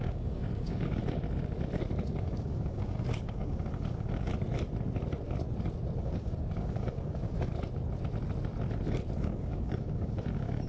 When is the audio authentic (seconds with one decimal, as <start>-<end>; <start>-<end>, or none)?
1.0-2.1; 4.3-6.0; 7.5-9.2